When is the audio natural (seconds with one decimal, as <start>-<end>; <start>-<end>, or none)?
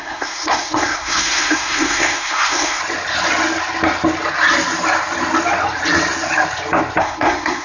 2.8-7.0